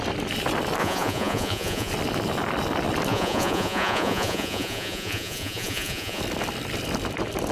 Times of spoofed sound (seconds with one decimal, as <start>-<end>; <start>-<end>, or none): 0.8-1.9; 3.1-6.2